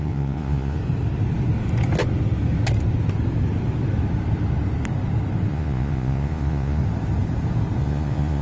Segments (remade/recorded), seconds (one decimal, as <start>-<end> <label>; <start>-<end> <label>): 0.0-0.8 remade; 0.8-5.5 recorded; 5.5-6.8 remade; 6.8-7.8 recorded; 7.8-8.4 remade